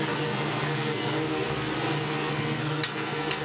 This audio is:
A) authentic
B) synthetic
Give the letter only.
B